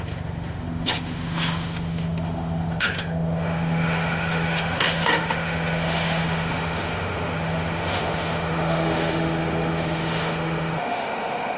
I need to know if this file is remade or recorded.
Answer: remade